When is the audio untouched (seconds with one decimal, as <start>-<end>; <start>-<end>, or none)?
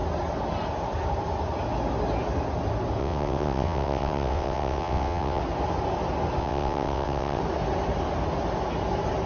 0.0-3.0; 5.4-6.4; 7.4-9.3